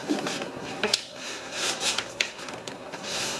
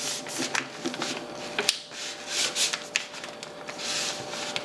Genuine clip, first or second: second